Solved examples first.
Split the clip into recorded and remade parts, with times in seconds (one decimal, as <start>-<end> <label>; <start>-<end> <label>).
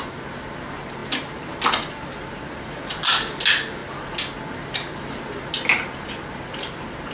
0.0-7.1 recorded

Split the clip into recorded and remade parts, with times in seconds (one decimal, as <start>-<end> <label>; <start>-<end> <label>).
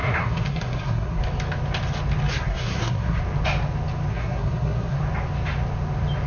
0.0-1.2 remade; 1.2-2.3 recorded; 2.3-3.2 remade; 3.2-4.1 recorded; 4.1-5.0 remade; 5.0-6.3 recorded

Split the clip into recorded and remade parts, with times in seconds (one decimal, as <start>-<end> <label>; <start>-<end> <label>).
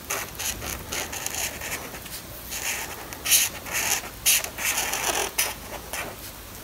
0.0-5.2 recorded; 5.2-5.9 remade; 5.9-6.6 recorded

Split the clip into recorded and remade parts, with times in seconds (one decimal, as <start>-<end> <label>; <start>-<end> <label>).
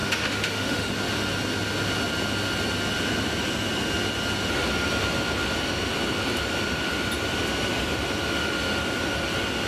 0.0-0.9 remade; 0.9-9.7 recorded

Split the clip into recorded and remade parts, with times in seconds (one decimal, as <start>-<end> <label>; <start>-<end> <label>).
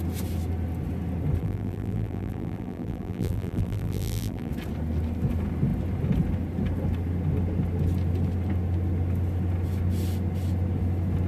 0.0-1.4 recorded; 1.4-4.5 remade; 4.5-11.3 recorded